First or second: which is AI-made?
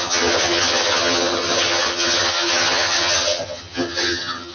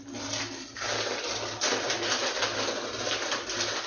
first